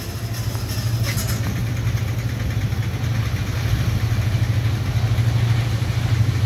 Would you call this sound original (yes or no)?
yes